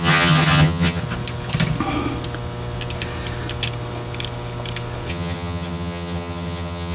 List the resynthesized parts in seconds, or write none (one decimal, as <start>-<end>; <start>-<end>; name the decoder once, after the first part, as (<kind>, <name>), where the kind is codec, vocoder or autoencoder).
0.0-1.0 (vocoder, HiFi-GAN); 5.1-6.9